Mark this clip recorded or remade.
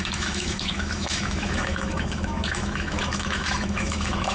remade